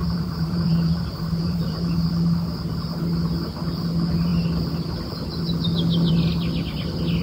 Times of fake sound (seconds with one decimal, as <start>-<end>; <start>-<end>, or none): 0.0-2.1